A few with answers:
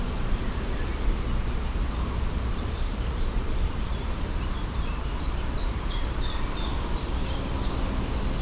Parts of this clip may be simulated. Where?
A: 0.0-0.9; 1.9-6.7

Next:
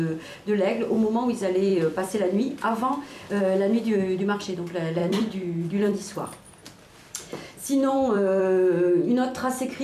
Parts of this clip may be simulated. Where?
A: 1.7-3.3; 5.0-8.4

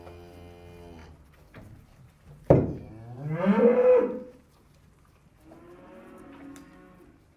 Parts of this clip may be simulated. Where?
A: none

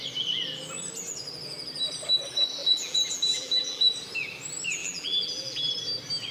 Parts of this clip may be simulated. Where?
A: 2.6-3.9; 4.8-5.7

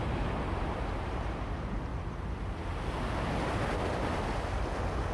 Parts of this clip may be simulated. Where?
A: 0.0-1.9

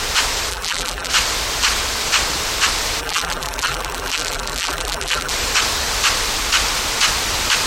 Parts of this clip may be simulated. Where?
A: 0.5-1.1; 3.0-5.3

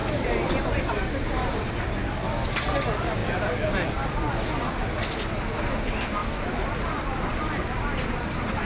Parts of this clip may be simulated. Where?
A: 0.0-1.7; 6.2-6.8; 7.3-8.6

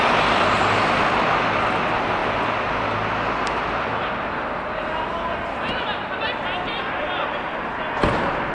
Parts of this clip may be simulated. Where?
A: none